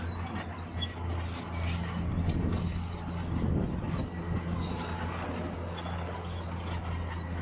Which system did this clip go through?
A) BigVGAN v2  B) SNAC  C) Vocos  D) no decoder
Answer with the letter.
D